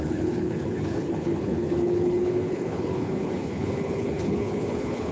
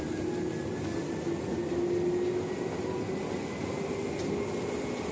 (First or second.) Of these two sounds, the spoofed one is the first